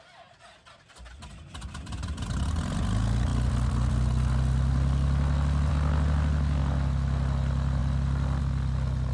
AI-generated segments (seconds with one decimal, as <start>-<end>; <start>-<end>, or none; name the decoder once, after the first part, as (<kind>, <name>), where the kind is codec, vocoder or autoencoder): none